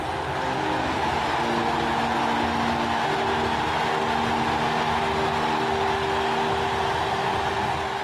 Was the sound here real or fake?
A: real